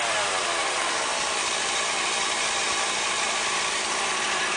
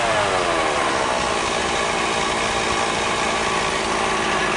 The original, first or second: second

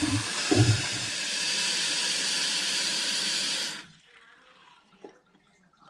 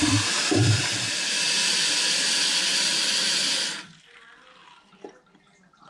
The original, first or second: second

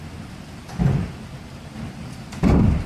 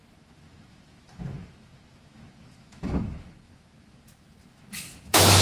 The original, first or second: first